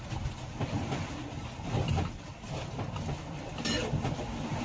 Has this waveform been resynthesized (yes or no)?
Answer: no